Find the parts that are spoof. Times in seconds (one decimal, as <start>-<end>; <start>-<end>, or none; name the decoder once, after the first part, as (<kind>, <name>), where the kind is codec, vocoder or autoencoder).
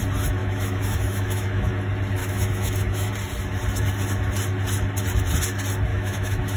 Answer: 0.4-1.7 (autoencoder, DAC-VAE); 2.2-3.1; 5.9-6.6